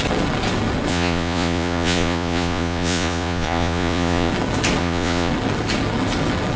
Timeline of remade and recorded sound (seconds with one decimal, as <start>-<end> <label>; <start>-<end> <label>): 0.0-0.9 recorded; 0.9-4.3 remade; 4.3-4.8 recorded; 4.8-5.3 remade; 5.3-6.6 recorded